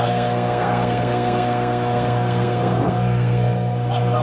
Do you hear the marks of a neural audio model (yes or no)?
yes